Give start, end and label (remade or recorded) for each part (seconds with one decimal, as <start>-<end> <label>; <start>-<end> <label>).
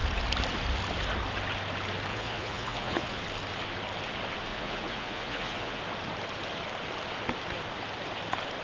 0.0-2.1 recorded; 2.1-3.2 remade; 3.2-4.5 recorded; 4.5-5.8 remade; 5.8-8.6 recorded